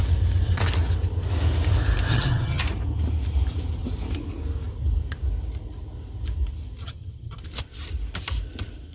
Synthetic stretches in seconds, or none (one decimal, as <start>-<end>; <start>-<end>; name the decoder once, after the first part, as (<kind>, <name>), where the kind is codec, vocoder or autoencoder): 2.1-2.6 (vocoder, HiFi-GAN); 6.8-7.4